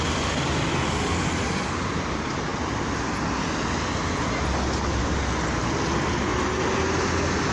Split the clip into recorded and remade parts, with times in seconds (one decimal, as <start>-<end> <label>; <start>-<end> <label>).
0.0-7.5 recorded